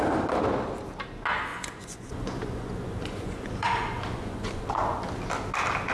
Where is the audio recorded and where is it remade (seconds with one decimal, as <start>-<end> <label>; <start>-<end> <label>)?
0.0-1.5 recorded; 1.5-5.0 remade; 5.0-5.9 recorded